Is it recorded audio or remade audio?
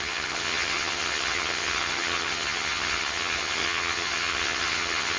remade